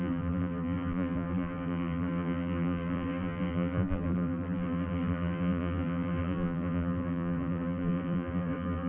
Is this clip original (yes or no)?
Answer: no